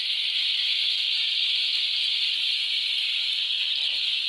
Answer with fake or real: real